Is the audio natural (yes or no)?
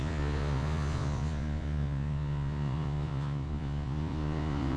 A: no